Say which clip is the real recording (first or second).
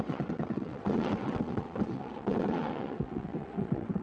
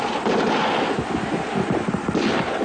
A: second